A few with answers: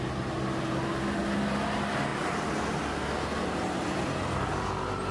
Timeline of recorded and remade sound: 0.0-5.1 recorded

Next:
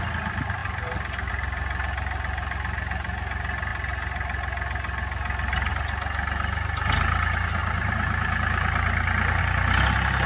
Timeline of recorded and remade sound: 0.0-7.6 recorded; 7.6-9.4 remade; 9.4-10.3 recorded

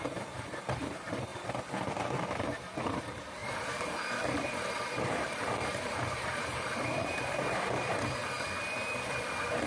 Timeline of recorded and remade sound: 0.0-1.3 remade; 1.3-2.3 recorded; 2.3-8.2 remade; 8.2-9.2 recorded; 9.2-9.7 remade